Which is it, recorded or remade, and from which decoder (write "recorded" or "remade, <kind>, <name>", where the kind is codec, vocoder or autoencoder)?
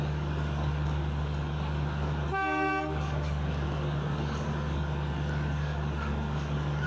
remade, codec, DAC